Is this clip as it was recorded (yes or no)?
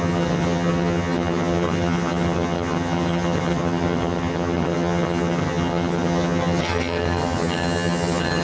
no